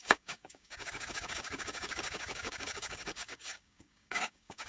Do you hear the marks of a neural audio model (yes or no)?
yes